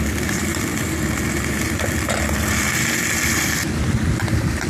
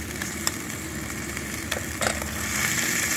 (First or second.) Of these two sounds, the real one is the first